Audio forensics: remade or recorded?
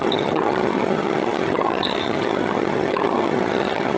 remade